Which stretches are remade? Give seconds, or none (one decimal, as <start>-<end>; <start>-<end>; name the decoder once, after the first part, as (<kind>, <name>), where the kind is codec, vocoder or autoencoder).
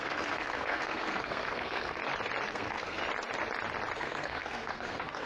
0.0-2.0 (codec, SNAC); 2.5-3.0; 4.0-5.3